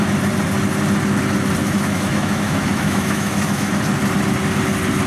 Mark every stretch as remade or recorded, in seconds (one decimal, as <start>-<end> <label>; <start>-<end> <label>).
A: 0.0-1.6 recorded; 1.6-3.7 remade; 3.7-5.1 recorded